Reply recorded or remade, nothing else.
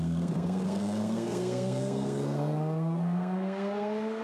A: remade